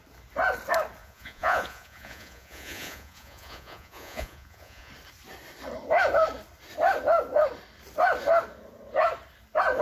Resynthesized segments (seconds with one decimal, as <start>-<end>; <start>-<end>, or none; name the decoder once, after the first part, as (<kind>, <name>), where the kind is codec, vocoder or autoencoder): 1.0-4.9 (vocoder, Vocos)